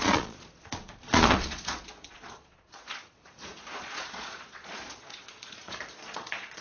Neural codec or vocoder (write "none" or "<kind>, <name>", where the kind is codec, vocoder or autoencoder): vocoder, Vocos